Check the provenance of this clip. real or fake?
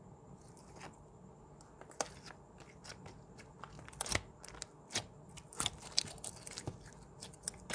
real